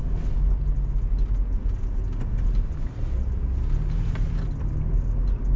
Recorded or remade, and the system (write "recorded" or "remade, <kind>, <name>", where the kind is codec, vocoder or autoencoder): recorded